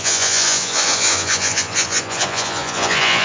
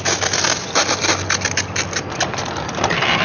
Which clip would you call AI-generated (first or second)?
first